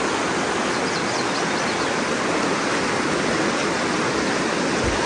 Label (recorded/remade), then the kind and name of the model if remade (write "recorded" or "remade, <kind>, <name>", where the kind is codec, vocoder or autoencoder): recorded